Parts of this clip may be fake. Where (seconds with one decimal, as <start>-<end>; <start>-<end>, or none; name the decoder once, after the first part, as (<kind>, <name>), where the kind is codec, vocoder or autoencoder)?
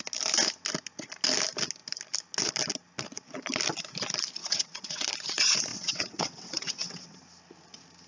4.4-5.0 (vocoder, WaveNeXt); 5.7-7.2